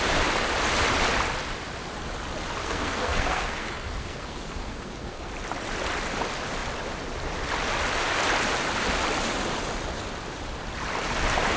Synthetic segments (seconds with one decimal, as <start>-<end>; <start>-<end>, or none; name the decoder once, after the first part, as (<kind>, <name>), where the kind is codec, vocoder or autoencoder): 2.6-5.3 (codec, SNAC)